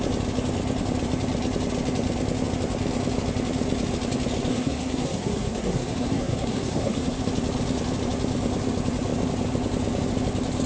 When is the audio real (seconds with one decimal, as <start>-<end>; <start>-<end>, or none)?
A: 0.0-4.5; 7.2-10.7